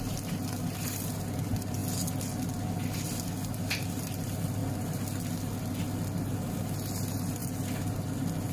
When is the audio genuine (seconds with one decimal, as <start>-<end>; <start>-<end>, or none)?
1.8-2.7; 4.6-5.8; 7.4-8.5